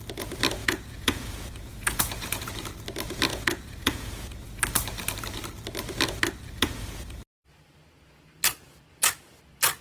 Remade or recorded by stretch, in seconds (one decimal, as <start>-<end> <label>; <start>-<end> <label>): 0.0-0.6 recorded; 0.6-2.5 remade; 2.5-3.3 recorded; 3.3-4.3 remade; 4.3-9.8 recorded